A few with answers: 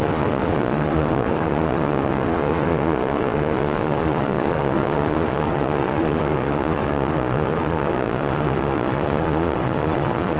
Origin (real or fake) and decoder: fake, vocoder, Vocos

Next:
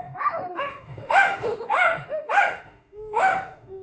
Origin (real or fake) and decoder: fake, autoencoder, DAC-VAE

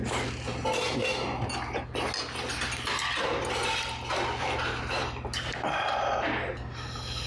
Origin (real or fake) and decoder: real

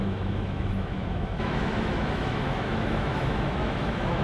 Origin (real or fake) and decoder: fake, autoencoder, DAC-VAE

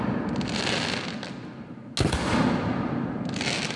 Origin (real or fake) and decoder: real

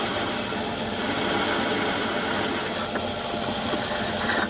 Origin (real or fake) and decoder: real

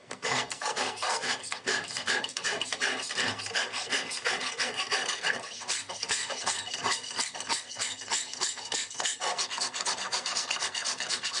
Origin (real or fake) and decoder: fake, codec, SNAC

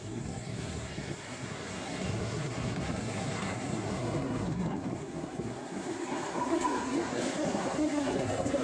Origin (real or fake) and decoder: fake, codec, SNAC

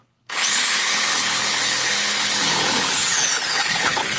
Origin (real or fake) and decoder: fake, codec, HILCodec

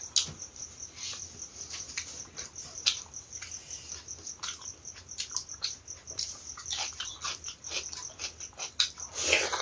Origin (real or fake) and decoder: real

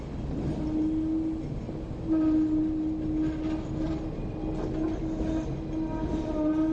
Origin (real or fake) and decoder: real